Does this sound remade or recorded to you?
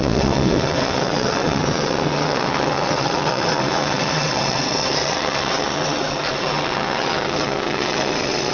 remade